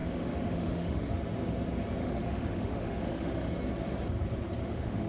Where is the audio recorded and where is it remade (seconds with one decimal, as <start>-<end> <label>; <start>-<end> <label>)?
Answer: 0.0-1.1 remade; 1.1-2.0 recorded; 2.0-3.5 remade; 3.5-4.6 recorded; 4.6-5.1 remade